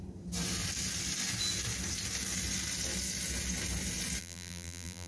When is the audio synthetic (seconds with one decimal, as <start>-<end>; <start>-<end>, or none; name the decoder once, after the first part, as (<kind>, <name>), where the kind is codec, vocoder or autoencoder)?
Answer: 4.2-5.1 (vocoder, BigVGAN v2)